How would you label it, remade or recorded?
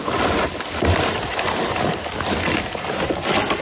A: recorded